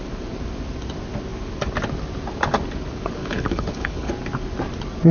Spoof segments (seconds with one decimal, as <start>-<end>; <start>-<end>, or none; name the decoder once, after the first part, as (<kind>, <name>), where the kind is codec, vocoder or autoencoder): 3.2-4.1 (codec, HILCodec)